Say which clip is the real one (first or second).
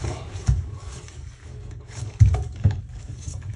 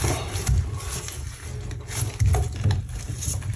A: second